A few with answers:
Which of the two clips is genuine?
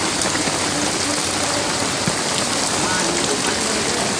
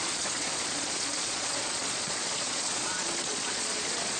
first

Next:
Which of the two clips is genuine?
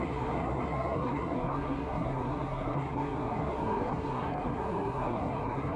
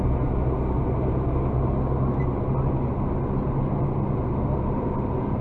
second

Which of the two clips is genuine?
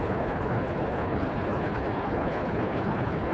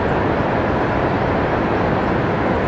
second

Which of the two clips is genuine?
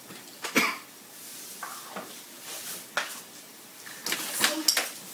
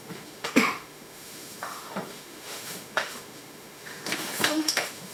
first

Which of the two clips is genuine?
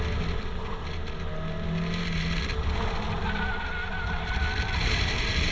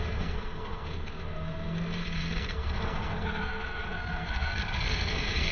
first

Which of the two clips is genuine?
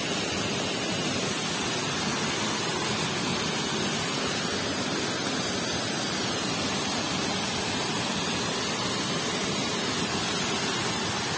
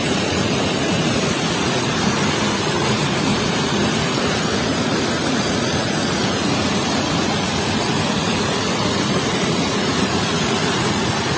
first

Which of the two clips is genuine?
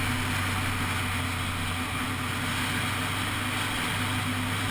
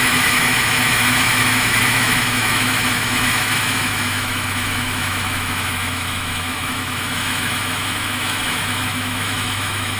first